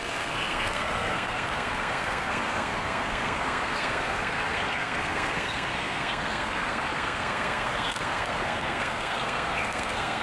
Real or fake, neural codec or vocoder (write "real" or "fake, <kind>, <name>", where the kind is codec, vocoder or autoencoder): fake, codec, SNAC